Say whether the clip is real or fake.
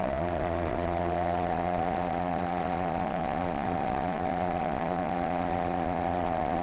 fake